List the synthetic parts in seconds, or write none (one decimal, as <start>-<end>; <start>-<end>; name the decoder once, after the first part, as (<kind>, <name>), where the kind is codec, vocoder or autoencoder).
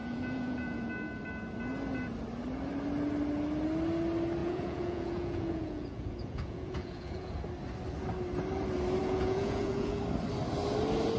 0.0-0.9 (vocoder, Vocos); 4.4-7.4; 9.0-10.0